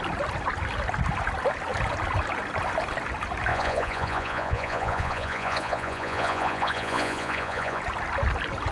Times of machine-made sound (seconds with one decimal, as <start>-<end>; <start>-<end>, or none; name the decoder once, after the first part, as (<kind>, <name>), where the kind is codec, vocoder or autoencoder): 3.5-7.8 (vocoder, Vocos)